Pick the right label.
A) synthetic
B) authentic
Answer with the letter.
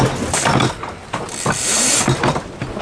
B